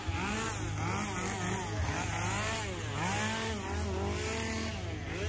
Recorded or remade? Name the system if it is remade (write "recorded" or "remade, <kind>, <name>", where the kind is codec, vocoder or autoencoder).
recorded